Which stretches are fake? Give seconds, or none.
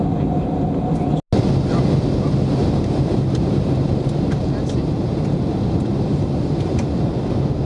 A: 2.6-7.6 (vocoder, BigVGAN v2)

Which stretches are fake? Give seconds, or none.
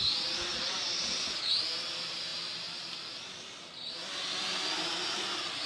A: 0.5-1.6 (vocoder, BigVGAN v2)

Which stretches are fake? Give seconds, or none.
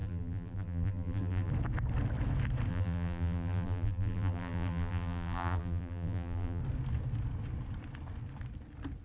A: 0.0-1.5 (vocoder, BigVGAN v2); 2.7-6.6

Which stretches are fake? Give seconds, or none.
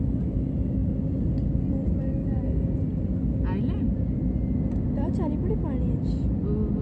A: none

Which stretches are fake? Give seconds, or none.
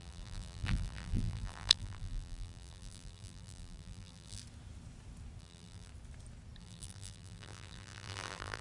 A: 0.0-4.4 (vocoder, BigVGAN v2); 5.4-5.9; 6.6-8.6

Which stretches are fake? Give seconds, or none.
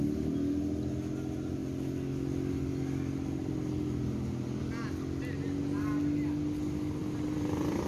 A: 7.0-7.9 (vocoder, BigVGAN v2)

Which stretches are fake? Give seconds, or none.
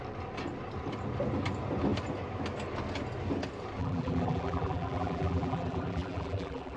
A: 3.8-6.8 (vocoder, BigVGAN v2)